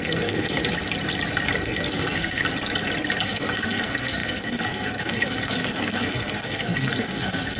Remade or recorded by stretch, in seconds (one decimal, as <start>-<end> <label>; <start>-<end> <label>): 0.0-0.6 remade; 0.6-1.6 recorded; 1.6-2.4 remade; 2.4-3.2 recorded; 3.2-7.6 remade

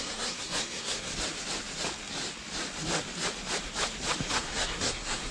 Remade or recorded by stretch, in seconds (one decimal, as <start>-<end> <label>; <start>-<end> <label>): 0.0-1.1 remade; 1.1-4.3 recorded; 4.3-5.3 remade

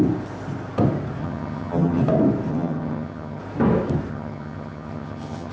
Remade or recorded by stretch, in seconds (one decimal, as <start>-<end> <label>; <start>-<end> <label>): 0.0-1.2 recorded; 1.2-2.0 remade; 2.0-2.5 recorded; 2.5-3.4 remade; 3.4-4.1 recorded; 4.1-5.5 remade

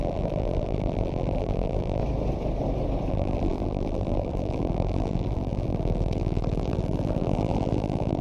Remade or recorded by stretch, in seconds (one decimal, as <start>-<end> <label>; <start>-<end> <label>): 0.0-2.0 remade; 2.0-3.1 recorded; 3.1-8.2 remade